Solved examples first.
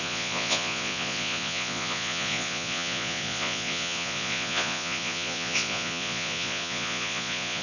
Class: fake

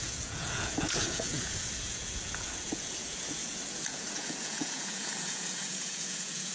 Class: fake